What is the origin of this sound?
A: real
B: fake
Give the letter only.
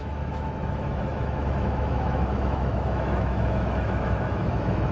B